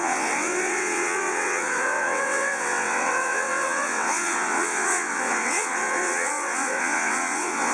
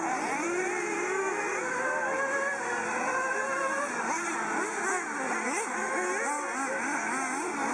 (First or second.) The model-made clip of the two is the first